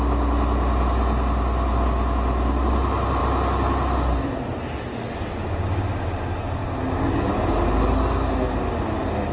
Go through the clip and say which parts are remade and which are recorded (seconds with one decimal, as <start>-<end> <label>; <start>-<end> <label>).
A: 0.0-9.3 recorded